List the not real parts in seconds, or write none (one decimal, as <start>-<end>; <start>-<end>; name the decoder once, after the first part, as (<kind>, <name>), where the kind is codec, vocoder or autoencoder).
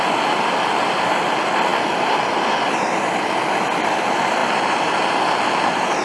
0.0-6.0 (vocoder, BigVGAN v2)